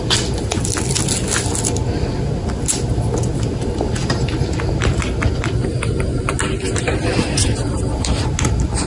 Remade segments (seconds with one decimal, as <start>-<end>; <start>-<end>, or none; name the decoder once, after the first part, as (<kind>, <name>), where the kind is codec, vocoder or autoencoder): none